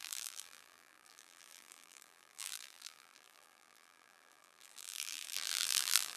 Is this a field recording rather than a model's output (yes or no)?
no